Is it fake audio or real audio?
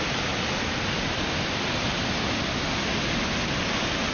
real